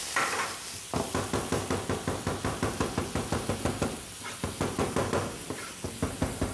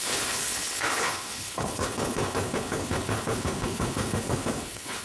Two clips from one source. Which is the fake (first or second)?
second